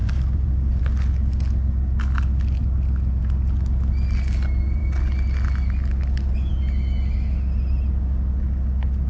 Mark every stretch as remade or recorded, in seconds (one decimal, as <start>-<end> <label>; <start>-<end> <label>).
0.0-0.8 remade; 0.8-2.6 recorded; 2.6-3.2 remade; 3.2-9.1 recorded